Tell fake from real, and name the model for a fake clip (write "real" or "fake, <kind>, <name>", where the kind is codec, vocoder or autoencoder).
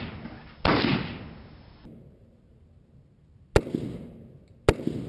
real